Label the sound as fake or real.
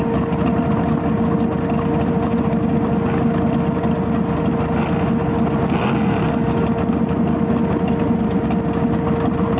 real